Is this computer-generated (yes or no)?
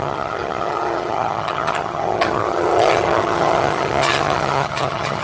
yes